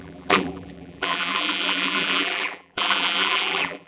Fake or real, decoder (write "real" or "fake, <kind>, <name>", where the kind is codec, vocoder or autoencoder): fake, vocoder, BigVGAN v2